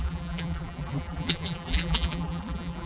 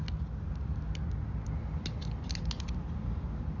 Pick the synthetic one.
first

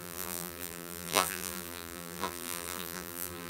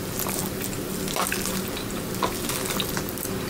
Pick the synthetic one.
first